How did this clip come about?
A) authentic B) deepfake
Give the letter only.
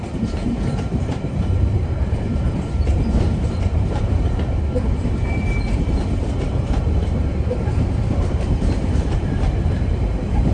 B